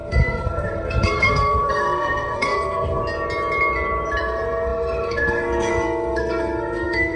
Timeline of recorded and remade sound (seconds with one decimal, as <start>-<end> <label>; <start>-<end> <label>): 0.0-3.0 remade; 3.0-4.2 recorded; 4.2-7.2 remade